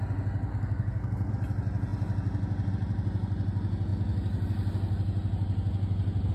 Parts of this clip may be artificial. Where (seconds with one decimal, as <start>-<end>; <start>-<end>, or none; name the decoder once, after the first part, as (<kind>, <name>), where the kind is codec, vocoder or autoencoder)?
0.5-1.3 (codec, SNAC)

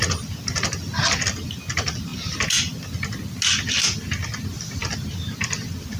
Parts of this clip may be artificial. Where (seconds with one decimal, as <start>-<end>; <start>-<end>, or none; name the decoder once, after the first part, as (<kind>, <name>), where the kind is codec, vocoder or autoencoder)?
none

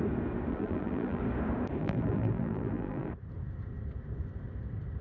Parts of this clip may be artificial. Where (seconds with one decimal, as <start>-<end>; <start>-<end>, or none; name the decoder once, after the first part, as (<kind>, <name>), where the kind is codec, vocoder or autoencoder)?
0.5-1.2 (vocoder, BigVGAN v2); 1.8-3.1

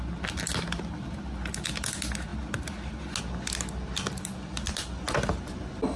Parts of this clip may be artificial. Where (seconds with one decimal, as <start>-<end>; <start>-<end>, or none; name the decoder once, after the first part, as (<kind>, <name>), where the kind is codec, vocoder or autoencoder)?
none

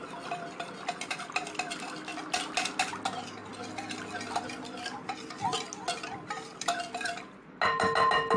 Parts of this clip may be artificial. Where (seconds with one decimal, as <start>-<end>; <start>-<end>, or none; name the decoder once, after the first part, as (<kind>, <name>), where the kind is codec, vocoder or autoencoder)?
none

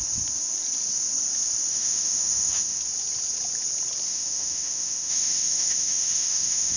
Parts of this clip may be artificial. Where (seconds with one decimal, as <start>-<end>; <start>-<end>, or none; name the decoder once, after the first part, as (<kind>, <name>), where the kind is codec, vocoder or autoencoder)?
1.7-2.8 (autoencoder, DAC-VAE); 4.1-6.8

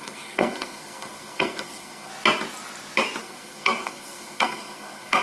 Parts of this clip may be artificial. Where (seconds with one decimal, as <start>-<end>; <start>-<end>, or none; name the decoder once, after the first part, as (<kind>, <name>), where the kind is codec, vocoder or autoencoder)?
0.0-2.1 (codec, SNAC); 3.2-5.2

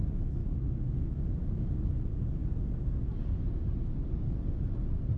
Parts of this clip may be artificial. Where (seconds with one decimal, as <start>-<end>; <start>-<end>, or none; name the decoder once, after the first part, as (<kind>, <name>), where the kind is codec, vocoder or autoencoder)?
0.4-1.2 (autoencoder, DAC-VAE)